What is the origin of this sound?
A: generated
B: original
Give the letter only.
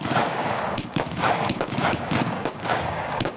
A